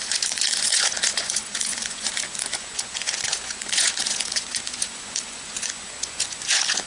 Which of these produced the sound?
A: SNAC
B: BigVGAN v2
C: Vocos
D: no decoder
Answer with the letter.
C